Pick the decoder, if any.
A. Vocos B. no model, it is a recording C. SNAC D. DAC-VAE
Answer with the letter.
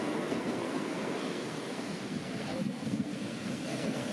C